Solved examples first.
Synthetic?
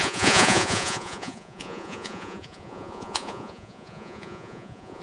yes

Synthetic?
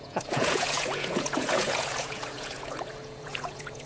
yes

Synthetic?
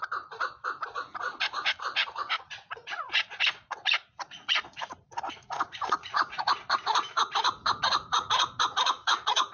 yes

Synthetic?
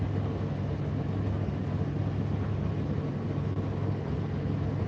no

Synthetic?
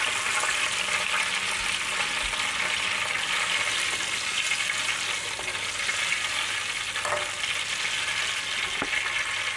no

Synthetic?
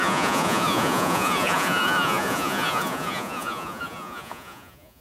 yes